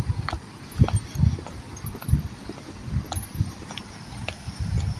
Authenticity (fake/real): real